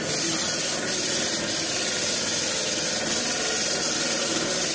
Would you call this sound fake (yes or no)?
no